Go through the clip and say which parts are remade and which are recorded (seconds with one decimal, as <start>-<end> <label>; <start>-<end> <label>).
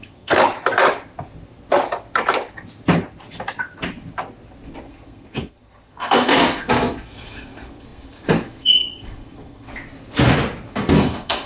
0.0-0.4 remade; 0.4-4.9 recorded; 4.9-9.7 remade; 9.7-10.7 recorded; 10.7-11.5 remade